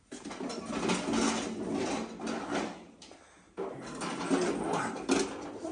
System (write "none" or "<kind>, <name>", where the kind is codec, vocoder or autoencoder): none